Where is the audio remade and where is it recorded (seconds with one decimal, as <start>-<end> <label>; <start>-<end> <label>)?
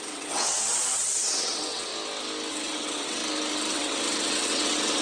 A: 0.0-1.9 remade; 1.9-2.5 recorded; 2.5-3.2 remade; 3.2-3.7 recorded; 3.7-5.0 remade